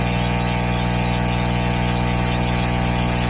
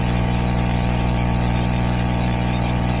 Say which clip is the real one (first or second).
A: first